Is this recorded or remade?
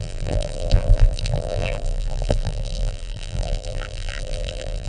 remade